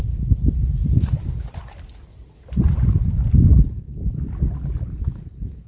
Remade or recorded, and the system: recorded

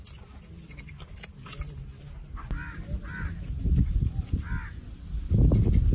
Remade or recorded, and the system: recorded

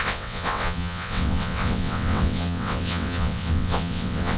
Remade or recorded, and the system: remade, vocoder, WaveNeXt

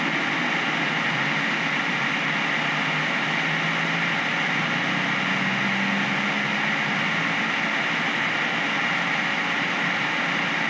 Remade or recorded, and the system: recorded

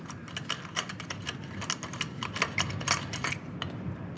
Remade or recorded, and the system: recorded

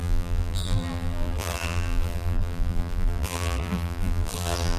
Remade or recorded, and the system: remade, vocoder, BigVGAN v2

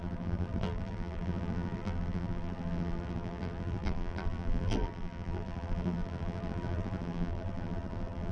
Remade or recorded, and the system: remade, vocoder, BigVGAN v2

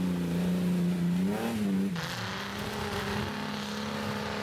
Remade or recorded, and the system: recorded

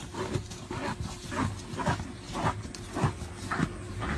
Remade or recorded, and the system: recorded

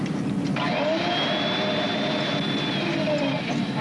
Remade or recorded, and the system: recorded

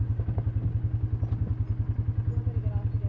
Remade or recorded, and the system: recorded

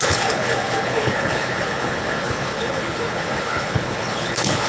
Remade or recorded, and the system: remade, codec, HILCodec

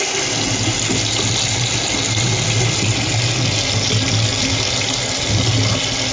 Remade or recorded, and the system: recorded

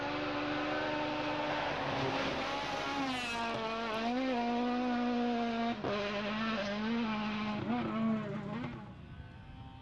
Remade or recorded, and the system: recorded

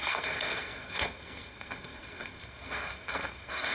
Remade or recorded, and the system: remade, codec, SNAC